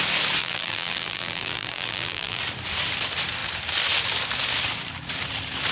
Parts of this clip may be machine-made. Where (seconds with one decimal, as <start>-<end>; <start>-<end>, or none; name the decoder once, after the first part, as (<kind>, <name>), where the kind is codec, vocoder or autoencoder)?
0.4-2.4 (vocoder, BigVGAN v2)